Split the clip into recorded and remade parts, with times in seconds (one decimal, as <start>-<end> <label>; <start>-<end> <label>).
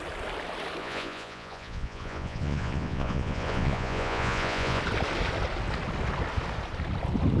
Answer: 0.0-0.8 recorded; 0.8-4.8 remade; 4.8-7.4 recorded